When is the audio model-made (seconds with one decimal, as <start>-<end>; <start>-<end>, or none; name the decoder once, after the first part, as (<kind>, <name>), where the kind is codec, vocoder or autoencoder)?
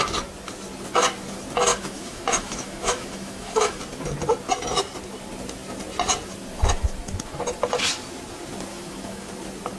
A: 1.7-3.8 (autoencoder, DAC-VAE); 8.7-9.3